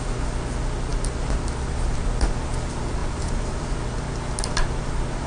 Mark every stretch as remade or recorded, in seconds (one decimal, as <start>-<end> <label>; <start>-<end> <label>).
0.0-5.3 recorded